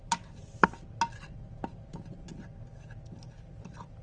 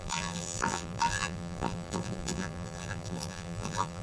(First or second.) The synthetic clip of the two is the second